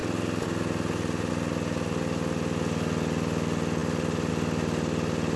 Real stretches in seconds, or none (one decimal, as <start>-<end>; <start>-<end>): 0.0-5.4